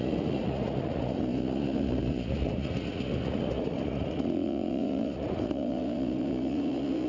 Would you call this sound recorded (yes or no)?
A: no